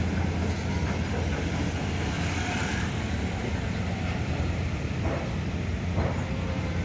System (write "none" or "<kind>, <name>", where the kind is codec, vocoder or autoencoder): none